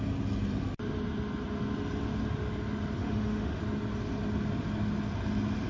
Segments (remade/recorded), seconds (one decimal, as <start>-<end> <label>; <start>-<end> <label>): 0.0-3.0 recorded; 3.0-3.6 remade; 3.6-5.7 recorded